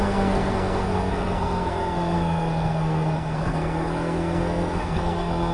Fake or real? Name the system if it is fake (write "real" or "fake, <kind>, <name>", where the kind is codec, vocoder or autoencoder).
fake, codec, SNAC